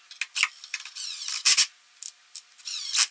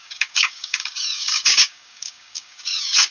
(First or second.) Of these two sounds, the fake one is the second